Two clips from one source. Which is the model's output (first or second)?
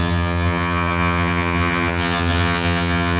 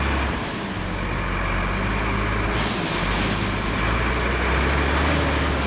first